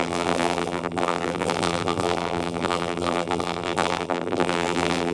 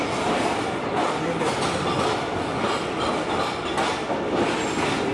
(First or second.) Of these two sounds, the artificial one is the first